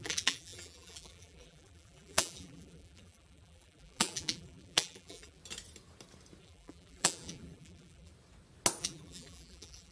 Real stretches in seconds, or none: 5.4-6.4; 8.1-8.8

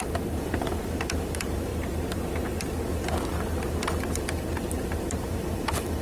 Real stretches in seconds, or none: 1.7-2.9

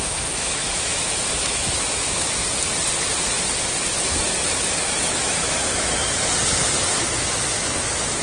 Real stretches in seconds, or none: 2.4-3.8; 6.0-6.9